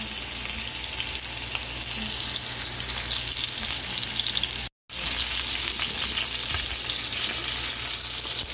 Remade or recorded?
recorded